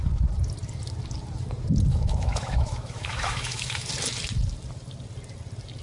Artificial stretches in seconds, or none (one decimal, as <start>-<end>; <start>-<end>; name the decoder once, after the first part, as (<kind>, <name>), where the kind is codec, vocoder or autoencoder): 1.9-3.9 (autoencoder, DAC-VAE)